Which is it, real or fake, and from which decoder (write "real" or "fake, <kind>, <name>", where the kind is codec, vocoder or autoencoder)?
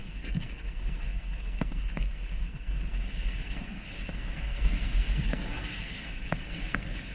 fake, codec, SNAC